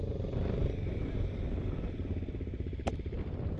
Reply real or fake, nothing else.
real